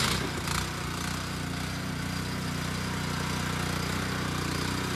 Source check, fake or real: real